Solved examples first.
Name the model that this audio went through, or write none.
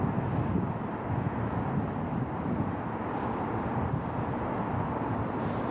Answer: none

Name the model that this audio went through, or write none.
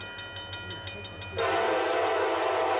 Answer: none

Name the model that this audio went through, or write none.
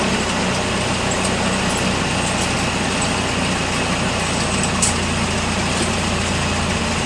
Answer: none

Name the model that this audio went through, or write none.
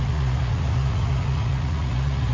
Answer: vocoder, Vocos